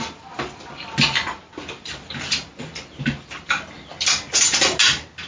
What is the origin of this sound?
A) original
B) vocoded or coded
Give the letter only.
A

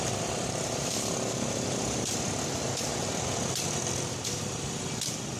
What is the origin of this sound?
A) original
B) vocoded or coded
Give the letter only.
A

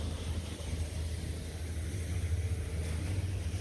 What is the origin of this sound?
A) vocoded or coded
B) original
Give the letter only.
B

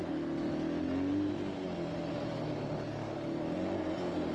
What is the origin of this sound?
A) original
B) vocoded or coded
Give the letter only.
A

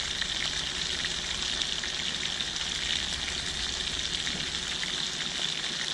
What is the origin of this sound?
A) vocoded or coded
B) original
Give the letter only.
B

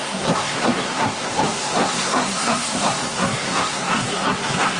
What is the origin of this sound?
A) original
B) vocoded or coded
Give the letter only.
B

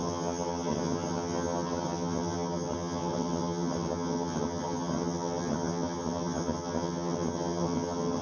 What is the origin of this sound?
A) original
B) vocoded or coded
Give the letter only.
B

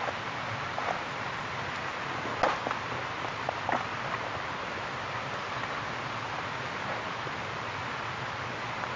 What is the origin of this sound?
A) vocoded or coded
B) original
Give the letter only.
B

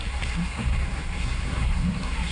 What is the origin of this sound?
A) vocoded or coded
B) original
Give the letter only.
A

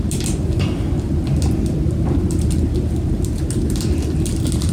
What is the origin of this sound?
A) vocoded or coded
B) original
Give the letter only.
B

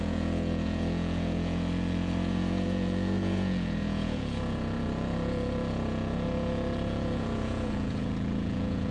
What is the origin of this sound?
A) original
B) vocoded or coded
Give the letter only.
B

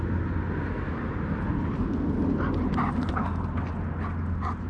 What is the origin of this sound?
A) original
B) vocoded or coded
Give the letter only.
A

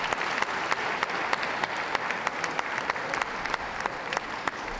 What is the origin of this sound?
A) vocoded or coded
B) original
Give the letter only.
B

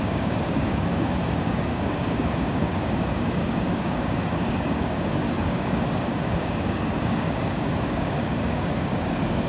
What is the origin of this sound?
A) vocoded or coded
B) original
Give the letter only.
A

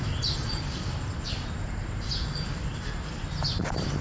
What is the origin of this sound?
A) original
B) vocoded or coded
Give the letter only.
B